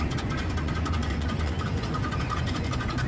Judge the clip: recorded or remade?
remade